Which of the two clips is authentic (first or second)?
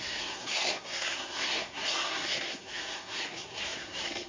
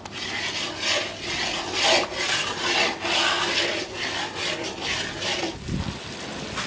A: second